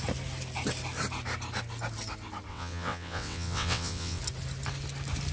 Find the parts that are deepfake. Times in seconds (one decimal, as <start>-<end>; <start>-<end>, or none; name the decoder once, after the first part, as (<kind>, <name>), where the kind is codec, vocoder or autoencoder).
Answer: 2.5-4.2 (vocoder, WaveNeXt)